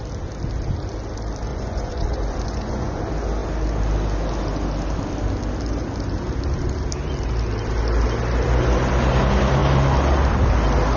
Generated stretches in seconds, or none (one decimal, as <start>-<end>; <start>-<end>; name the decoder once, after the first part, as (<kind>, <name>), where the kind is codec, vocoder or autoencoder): 1.5-3.0 (vocoder, Vocos)